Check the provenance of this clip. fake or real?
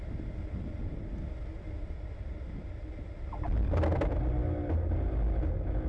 real